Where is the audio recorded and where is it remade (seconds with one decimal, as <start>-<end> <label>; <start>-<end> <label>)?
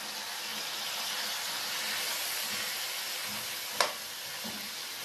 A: 0.0-5.0 recorded